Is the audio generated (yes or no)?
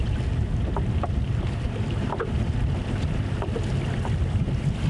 no